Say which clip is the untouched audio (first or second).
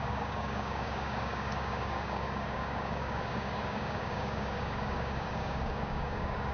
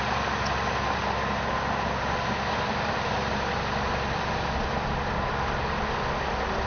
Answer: second